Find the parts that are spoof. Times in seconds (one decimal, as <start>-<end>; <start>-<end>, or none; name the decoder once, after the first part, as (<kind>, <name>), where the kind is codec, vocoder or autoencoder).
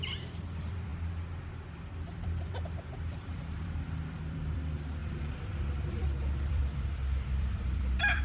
0.0-8.2 (vocoder, BigVGAN v2)